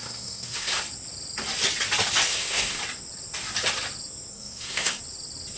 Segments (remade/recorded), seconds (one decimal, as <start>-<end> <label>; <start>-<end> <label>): 0.0-0.8 remade; 0.8-2.3 recorded; 2.3-2.8 remade; 2.8-4.3 recorded; 4.3-5.0 remade; 5.0-5.6 recorded